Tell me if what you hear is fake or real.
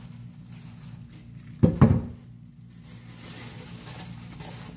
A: real